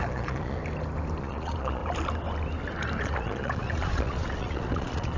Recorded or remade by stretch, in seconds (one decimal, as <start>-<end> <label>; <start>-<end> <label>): 0.0-0.6 remade; 0.6-1.2 recorded; 1.2-1.8 remade; 1.8-3.0 recorded; 3.0-5.2 remade